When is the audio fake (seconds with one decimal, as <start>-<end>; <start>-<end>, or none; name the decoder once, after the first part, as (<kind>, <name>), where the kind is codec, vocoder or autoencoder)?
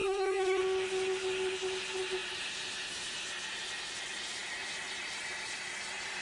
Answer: 0.0-0.6 (codec, SNAC)